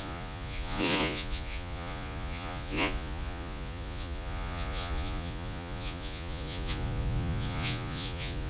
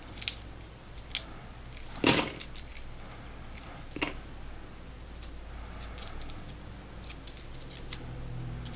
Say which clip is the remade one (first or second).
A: first